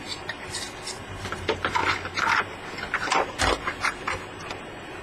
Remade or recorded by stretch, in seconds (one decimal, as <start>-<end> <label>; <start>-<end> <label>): 0.0-5.0 recorded